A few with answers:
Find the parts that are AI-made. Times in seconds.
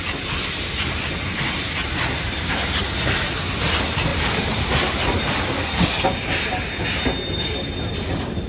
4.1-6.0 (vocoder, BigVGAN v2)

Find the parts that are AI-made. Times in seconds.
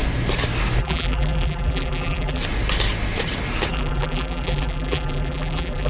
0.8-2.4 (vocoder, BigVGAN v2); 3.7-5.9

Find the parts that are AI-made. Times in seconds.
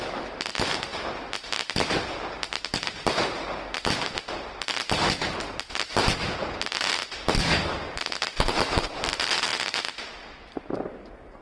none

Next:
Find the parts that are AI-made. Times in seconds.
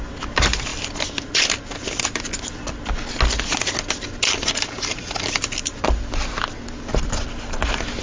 none